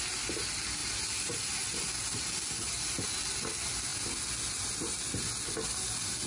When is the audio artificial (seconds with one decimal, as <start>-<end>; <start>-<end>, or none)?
0.8-1.5